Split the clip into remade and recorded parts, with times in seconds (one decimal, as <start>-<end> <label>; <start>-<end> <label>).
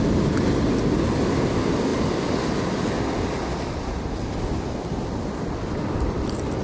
0.0-6.6 recorded